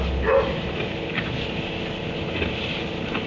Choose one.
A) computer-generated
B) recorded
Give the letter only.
B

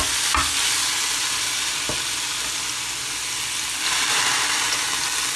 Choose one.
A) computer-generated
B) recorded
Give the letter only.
B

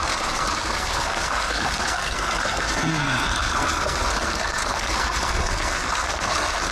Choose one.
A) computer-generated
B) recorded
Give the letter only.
A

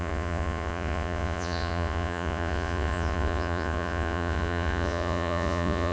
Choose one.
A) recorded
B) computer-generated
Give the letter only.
B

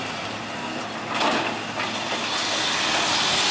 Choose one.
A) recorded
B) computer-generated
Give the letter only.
A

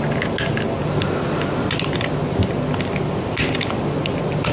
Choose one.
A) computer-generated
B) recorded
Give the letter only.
B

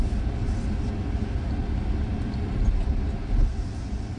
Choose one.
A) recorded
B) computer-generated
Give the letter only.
A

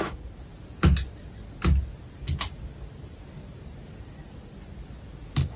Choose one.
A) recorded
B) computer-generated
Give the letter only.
A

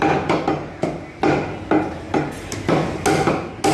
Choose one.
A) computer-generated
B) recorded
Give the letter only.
B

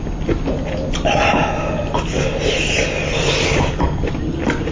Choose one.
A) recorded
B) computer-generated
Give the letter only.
A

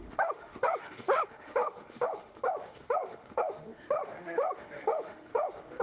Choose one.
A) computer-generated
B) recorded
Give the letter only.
A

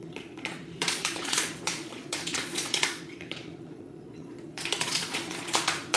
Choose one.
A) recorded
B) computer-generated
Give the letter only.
B